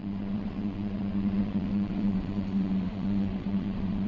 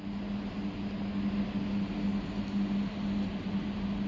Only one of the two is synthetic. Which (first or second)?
first